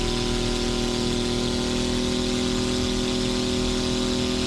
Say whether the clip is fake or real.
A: real